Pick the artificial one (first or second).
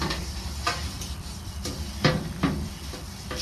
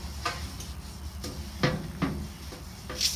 first